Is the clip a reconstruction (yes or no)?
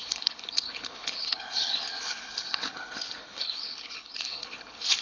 yes